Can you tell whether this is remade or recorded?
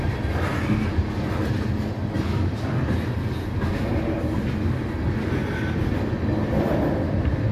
recorded